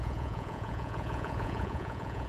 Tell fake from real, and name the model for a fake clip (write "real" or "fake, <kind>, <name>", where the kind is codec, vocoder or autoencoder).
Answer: fake, vocoder, Vocos